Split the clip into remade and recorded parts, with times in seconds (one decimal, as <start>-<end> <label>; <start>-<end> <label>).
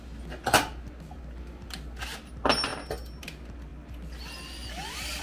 0.0-5.2 recorded